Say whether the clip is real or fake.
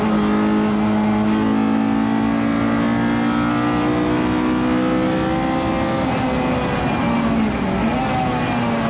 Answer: real